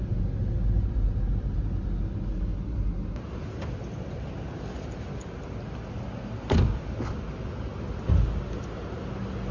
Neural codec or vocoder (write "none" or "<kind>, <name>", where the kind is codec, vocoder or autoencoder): none